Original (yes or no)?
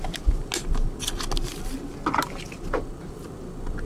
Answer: yes